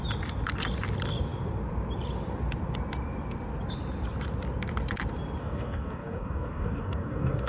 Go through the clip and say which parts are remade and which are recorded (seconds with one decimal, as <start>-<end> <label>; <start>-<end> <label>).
0.0-5.4 recorded; 5.4-7.5 remade